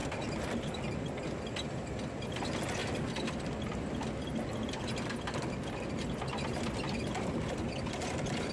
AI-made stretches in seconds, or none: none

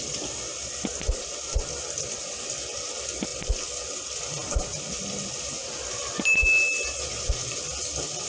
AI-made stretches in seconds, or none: none

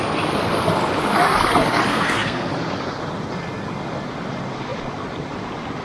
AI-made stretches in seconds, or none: 1.9-2.5 (codec, SNAC)